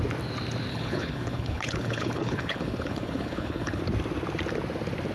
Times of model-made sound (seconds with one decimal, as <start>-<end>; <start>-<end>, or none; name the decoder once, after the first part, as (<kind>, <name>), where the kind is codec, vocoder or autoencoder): 0.7-3.8 (codec, HILCodec)